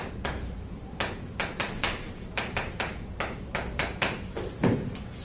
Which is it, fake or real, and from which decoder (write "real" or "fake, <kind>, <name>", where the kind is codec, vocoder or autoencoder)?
fake, vocoder, BigVGAN v2